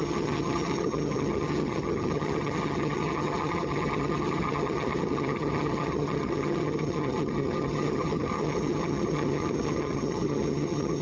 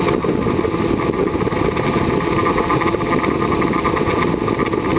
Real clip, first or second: second